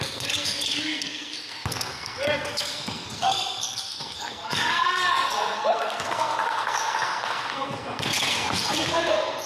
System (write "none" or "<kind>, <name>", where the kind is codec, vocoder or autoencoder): codec, SNAC